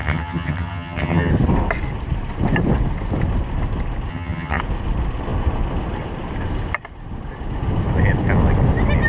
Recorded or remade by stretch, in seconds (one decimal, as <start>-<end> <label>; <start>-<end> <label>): 0.0-1.3 remade; 1.3-4.1 recorded; 4.1-4.6 remade; 4.6-9.1 recorded